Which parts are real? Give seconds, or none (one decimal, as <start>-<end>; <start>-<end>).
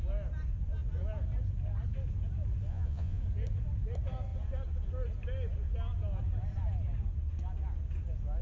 0.0-2.7; 3.2-8.4